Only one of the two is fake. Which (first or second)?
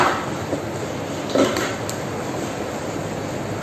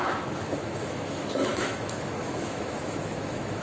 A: second